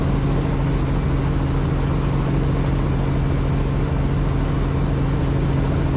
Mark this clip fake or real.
real